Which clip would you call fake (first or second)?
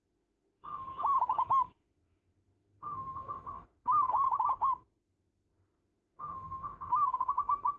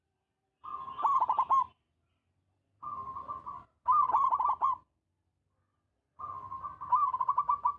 first